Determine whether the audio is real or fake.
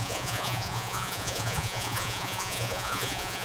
fake